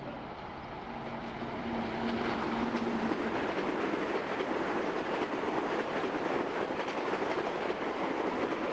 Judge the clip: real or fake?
fake